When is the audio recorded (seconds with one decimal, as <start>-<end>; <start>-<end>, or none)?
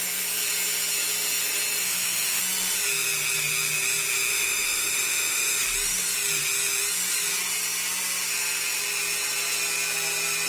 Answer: 0.0-1.8; 2.4-4.3; 5.6-10.5